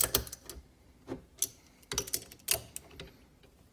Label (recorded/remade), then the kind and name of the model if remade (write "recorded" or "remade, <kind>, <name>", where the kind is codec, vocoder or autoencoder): recorded